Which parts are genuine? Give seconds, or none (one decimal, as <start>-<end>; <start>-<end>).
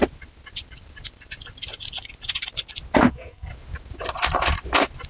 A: 0.0-3.1; 3.5-5.1